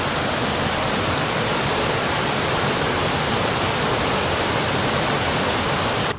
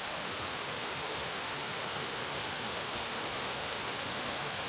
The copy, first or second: second